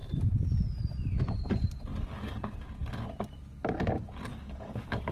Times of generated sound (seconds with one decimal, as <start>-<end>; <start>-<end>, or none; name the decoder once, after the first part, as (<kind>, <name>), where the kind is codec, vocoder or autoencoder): 4.3-5.1 (codec, DAC)